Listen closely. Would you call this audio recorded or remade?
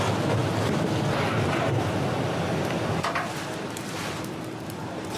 recorded